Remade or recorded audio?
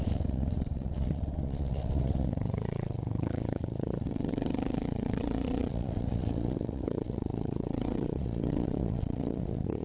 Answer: remade